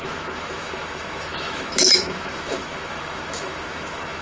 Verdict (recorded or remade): remade